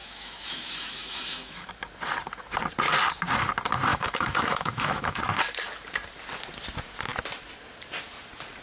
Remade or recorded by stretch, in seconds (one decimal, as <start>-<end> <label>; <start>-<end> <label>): 0.0-1.7 remade; 1.7-3.9 recorded; 3.9-5.2 remade; 5.2-8.6 recorded

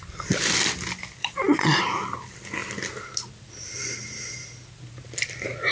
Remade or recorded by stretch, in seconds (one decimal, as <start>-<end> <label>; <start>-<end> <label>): 0.0-1.2 recorded; 1.2-1.8 remade; 1.8-5.7 recorded

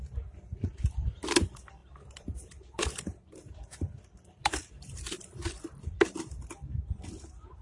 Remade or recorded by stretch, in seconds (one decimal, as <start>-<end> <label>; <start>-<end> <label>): 0.0-7.6 remade